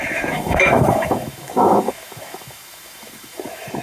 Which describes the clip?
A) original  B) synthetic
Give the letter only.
B